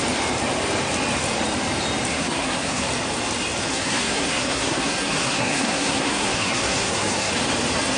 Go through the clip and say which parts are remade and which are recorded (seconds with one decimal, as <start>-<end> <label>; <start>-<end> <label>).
0.0-2.1 recorded; 2.1-2.9 remade; 2.9-3.7 recorded; 3.7-7.3 remade; 7.3-8.0 recorded